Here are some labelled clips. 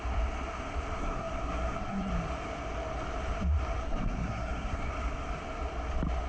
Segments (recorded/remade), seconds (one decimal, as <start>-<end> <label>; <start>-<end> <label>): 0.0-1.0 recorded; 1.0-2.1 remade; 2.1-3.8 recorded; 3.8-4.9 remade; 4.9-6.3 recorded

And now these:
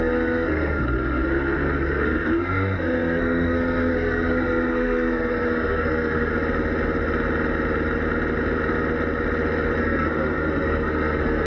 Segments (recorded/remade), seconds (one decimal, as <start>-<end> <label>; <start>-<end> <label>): 0.0-6.3 remade; 6.3-9.8 recorded; 9.8-11.5 remade

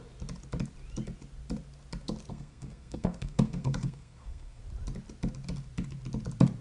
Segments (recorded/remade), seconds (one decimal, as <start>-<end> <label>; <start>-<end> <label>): 0.0-2.3 recorded; 2.3-4.6 remade; 4.6-6.6 recorded

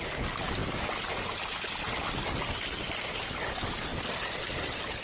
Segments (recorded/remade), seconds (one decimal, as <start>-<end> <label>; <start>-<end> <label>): 0.0-5.0 recorded

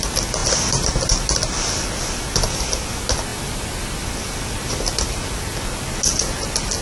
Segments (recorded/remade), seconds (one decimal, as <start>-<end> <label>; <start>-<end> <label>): 0.0-6.8 recorded